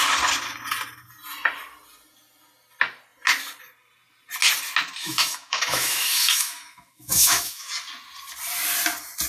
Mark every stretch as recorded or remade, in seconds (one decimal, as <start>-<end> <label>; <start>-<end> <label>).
0.0-5.0 recorded; 5.0-7.7 remade; 7.7-9.3 recorded